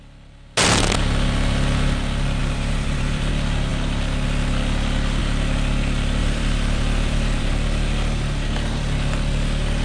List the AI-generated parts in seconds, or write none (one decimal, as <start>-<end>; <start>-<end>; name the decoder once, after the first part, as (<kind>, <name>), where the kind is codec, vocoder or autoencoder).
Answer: 2.4-3.3 (vocoder, BigVGAN v2); 6.2-7.5